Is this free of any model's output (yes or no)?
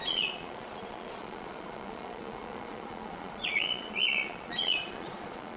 no